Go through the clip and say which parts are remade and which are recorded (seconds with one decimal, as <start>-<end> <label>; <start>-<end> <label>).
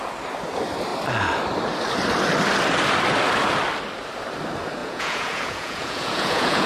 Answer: 0.0-4.8 recorded; 4.8-6.7 remade